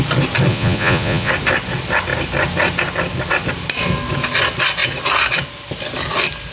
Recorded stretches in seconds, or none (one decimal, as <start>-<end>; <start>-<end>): 0.0-0.5; 1.3-6.5